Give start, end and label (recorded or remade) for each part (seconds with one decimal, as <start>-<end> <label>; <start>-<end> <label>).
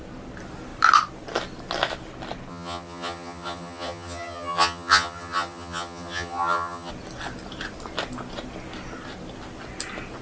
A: 0.0-2.5 recorded; 2.5-6.9 remade; 6.9-10.2 recorded